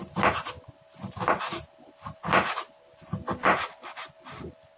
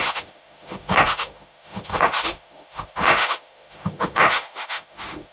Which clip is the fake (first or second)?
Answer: second